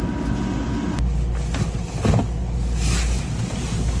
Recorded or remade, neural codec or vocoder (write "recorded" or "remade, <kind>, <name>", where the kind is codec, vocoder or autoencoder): recorded